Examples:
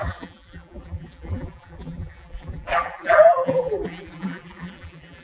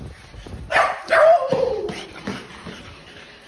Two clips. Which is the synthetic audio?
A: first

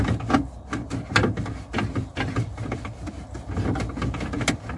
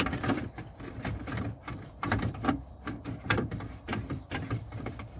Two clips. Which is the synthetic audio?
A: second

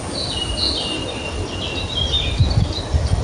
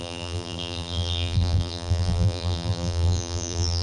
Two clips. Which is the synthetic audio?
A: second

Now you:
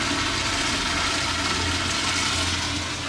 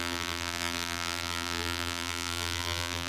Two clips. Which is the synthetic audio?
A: second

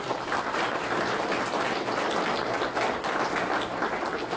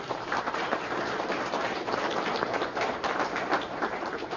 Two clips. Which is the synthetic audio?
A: second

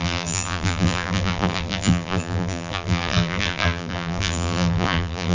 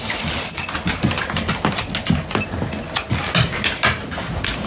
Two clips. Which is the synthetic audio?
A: first